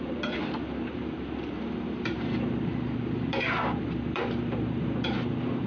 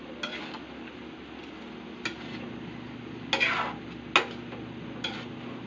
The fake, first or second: first